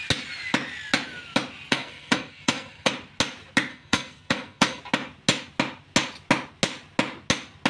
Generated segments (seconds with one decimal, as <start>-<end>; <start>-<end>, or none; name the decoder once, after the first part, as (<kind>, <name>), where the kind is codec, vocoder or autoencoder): 1.7-2.9 (codec, SNAC); 3.7-4.8